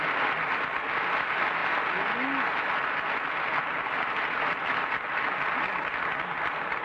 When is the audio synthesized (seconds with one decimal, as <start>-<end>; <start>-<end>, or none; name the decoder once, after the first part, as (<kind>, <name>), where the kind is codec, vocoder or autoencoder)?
none